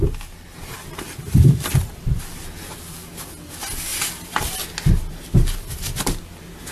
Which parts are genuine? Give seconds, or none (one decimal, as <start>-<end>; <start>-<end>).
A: 0.0-6.7